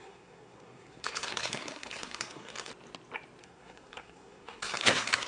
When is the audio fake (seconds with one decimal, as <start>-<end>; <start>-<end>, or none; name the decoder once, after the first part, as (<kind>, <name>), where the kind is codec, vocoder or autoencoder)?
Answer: 0.0-2.7 (codec, SNAC); 3.4-5.3